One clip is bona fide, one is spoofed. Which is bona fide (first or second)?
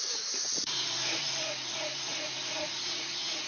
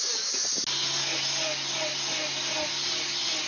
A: second